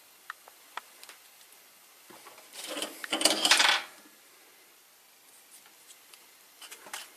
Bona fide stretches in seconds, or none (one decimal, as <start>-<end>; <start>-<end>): 0.0-3.0; 4.5-7.2